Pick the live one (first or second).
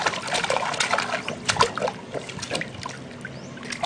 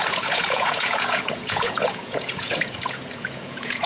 first